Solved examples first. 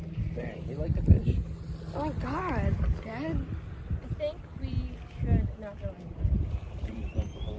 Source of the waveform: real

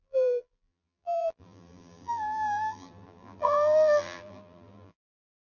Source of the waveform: fake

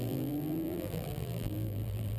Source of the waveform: fake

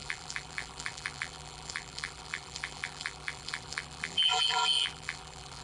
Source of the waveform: fake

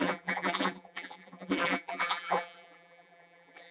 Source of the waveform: fake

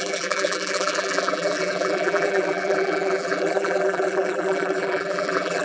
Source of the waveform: fake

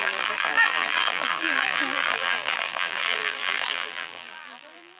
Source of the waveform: fake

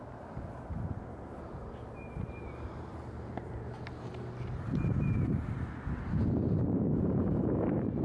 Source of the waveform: fake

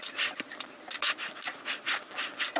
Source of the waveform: real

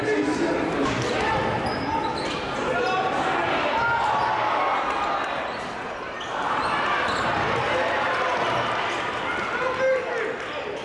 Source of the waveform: real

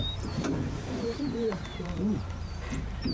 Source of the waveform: fake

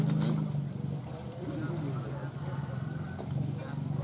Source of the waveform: real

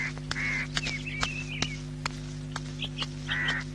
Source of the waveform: real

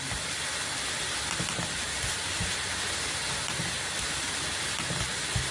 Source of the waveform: fake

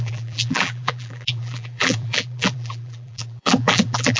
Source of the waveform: fake